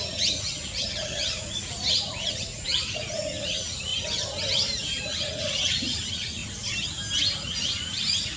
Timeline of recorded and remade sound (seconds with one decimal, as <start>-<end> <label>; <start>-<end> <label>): 0.0-3.9 remade; 3.9-5.0 recorded; 5.0-6.4 remade; 6.4-7.3 recorded; 7.3-8.4 remade